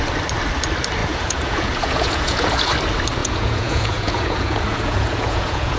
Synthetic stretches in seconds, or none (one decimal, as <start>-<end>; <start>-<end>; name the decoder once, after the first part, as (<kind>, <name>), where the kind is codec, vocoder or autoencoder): 1.0-2.7 (vocoder, Vocos); 3.2-5.8